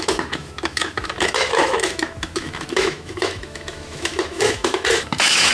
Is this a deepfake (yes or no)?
yes